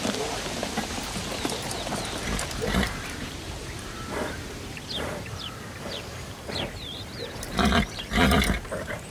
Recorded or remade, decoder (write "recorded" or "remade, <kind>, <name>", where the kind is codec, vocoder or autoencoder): remade, vocoder, BigVGAN v2